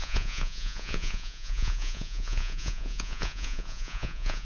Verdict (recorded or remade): remade